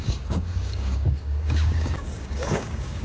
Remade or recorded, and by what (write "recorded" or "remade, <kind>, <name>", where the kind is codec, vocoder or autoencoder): remade, codec, DAC